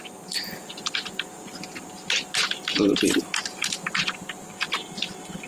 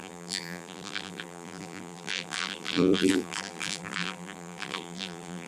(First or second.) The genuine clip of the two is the first